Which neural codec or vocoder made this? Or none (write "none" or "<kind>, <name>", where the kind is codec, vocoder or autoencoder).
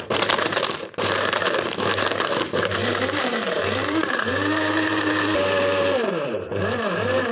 vocoder, BigVGAN v2